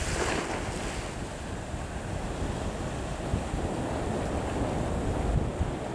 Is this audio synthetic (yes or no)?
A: no